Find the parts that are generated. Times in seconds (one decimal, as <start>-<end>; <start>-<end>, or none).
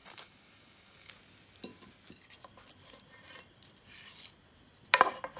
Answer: 0.0-1.1